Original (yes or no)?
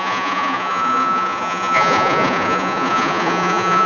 no